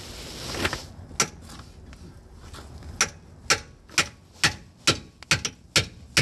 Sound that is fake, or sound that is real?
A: real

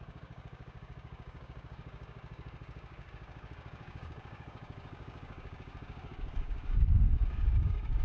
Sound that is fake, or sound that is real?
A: fake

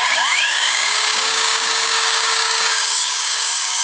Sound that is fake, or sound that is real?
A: fake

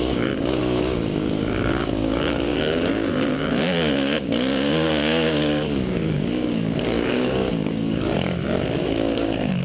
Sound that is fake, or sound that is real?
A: fake